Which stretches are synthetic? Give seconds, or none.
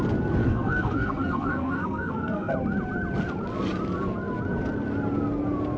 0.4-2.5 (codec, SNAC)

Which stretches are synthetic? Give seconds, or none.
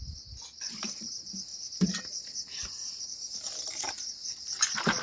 none